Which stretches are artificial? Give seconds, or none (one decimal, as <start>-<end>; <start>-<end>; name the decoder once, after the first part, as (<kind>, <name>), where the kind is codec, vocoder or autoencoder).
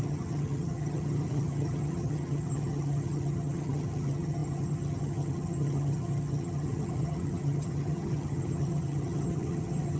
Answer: 0.0-10.0 (vocoder, HiFi-GAN)